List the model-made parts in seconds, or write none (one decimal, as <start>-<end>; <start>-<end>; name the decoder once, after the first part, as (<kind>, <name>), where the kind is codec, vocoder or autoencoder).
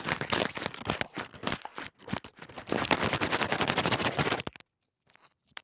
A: none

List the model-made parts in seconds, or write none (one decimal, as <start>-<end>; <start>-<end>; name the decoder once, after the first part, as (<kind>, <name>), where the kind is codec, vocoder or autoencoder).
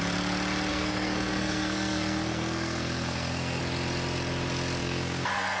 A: 0.7-3.6 (codec, SNAC); 4.8-5.6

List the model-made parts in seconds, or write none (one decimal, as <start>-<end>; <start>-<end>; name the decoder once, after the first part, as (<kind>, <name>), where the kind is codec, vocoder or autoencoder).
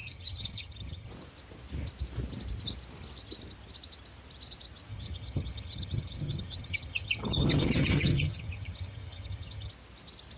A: 0.0-1.1 (vocoder, HiFi-GAN); 4.9-9.7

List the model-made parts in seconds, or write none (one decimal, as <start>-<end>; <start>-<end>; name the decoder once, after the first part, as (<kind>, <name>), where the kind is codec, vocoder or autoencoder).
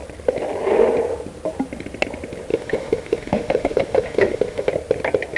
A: 2.5-4.7 (autoencoder, DAC-VAE)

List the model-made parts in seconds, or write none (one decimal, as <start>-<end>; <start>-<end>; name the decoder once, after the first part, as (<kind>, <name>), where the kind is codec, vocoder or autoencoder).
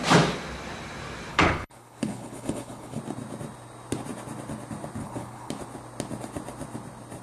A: 1.3-3.0 (codec, HILCodec); 5.0-5.5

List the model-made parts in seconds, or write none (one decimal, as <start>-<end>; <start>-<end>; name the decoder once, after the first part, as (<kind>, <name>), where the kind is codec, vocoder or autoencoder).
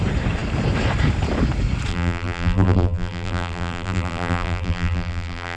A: 1.9-5.6 (vocoder, BigVGAN v2)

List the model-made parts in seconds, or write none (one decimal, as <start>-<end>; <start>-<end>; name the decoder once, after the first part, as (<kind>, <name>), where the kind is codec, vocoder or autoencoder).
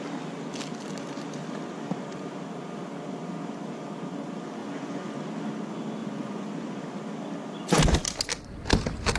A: 4.6-5.2 (vocoder, Vocos); 6.0-6.8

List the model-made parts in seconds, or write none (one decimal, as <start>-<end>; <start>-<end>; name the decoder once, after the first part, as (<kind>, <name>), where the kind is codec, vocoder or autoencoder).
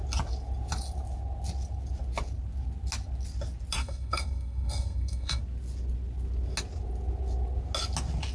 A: 3.8-5.4 (codec, SNAC)